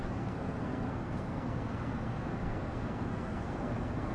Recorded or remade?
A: remade